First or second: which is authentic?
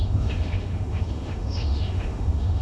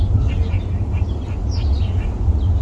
second